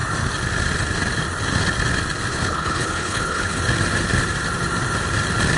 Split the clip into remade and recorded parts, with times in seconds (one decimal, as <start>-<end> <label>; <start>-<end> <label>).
0.0-2.3 recorded; 2.3-3.6 remade; 3.6-5.6 recorded